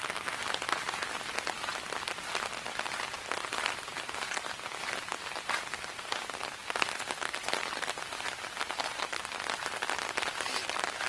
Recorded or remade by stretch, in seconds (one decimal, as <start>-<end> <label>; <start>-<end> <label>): 0.0-11.1 recorded